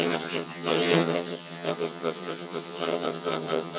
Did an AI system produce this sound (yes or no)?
yes